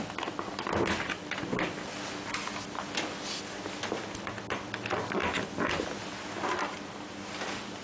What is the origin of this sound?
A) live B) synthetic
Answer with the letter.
A